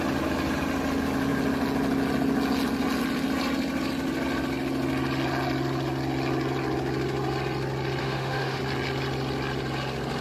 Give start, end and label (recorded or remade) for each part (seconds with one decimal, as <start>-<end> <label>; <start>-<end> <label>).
0.0-8.0 recorded; 8.0-8.6 remade; 8.6-10.2 recorded